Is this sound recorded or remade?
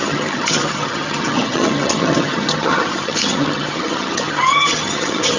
remade